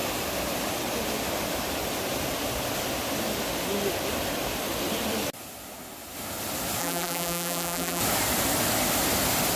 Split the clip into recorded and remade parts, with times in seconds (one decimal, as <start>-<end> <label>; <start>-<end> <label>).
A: 0.0-6.8 recorded; 6.8-8.0 remade; 8.0-9.6 recorded